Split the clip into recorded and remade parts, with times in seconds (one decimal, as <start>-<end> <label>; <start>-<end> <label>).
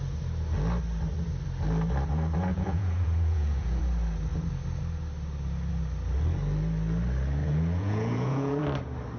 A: 0.0-2.5 recorded; 2.5-3.8 remade; 3.8-7.4 recorded; 7.4-8.6 remade; 8.6-9.2 recorded